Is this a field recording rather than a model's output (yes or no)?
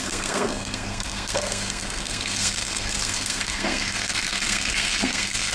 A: no